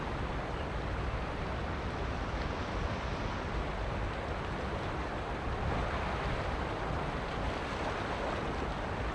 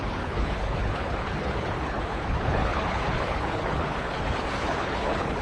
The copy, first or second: second